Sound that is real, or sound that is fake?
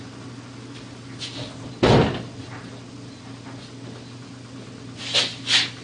real